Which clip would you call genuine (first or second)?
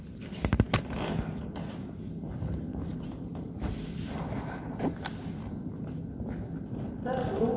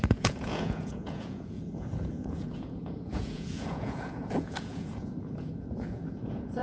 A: first